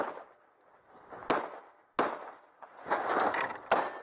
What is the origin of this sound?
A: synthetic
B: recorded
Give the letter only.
B